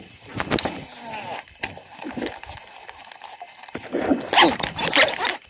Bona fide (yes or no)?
yes